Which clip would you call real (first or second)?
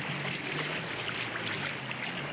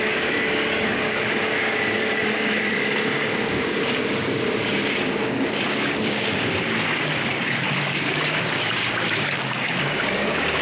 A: first